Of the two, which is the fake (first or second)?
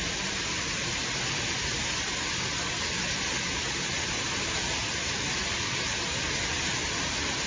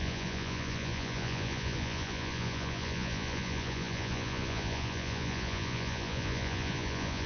second